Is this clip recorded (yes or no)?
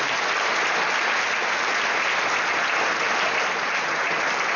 yes